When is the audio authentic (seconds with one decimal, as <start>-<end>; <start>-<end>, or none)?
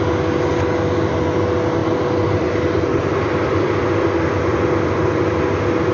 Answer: 0.0-1.8; 5.3-5.9